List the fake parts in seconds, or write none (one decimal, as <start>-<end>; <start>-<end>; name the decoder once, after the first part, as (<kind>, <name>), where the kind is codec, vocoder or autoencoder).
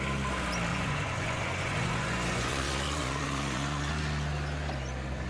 0.7-3.9 (vocoder, Vocos)